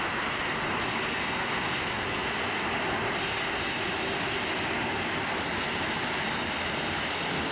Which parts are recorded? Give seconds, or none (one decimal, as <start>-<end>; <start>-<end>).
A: 0.0-7.5